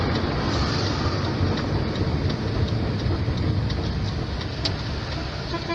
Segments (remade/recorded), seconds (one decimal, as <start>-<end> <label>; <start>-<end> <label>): 0.0-5.7 recorded